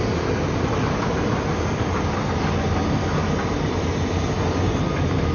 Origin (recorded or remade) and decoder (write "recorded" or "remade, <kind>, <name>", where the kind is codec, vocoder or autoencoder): recorded